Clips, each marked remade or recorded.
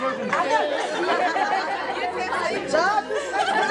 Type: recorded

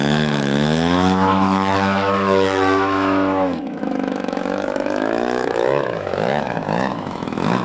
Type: remade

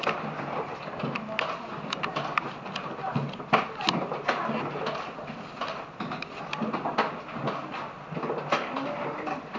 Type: recorded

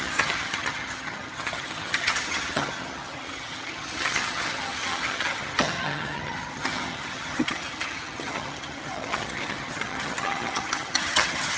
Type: remade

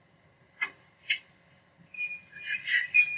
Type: recorded